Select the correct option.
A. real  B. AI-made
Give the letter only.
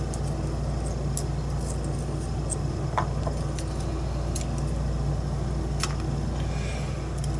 A